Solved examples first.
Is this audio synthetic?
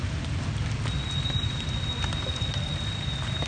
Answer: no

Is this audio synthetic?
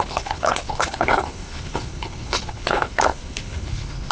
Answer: yes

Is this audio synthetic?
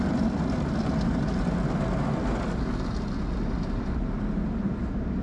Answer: no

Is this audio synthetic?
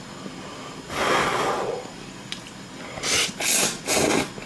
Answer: no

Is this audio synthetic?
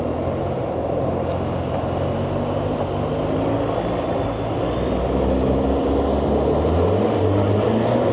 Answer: no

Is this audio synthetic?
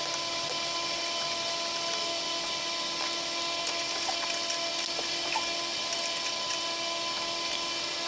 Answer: no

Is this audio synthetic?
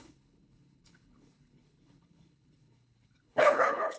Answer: yes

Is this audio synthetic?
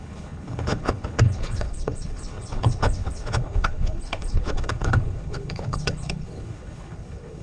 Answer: yes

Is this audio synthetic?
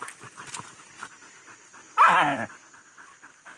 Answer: no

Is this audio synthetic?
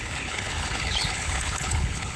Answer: yes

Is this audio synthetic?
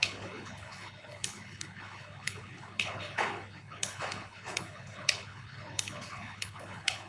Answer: yes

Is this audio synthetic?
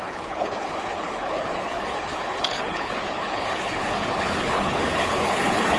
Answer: yes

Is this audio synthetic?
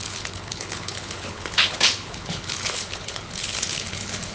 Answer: yes